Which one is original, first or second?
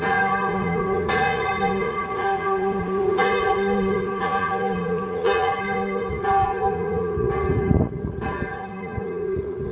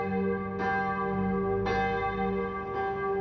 second